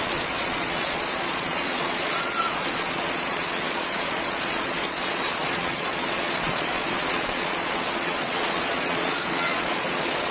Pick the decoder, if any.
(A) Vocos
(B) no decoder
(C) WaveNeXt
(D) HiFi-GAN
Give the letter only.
A